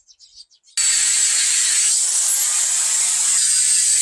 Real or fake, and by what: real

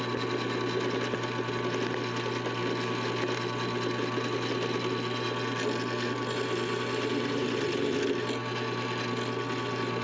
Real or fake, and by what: real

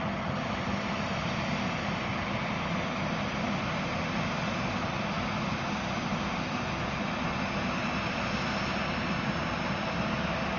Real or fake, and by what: real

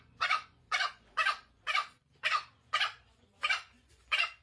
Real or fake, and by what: fake, vocoder, Vocos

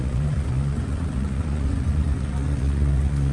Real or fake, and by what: fake, vocoder, Vocos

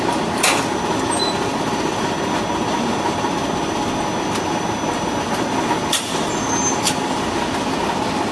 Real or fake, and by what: real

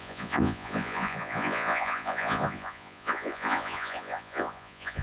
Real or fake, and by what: fake, vocoder, Vocos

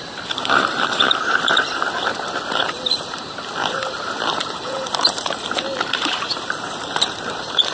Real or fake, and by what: fake, vocoder, BigVGAN v2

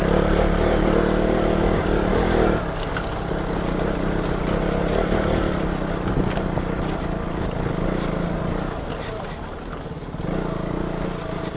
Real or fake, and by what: real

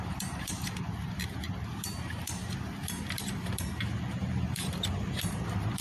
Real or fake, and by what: fake, vocoder, BigVGAN v2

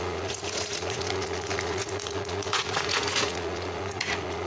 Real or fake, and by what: fake, vocoder, Vocos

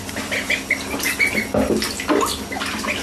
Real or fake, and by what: real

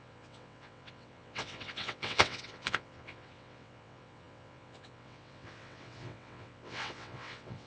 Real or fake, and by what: fake, vocoder, WaveNeXt